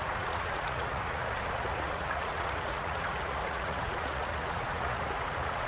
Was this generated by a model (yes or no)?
yes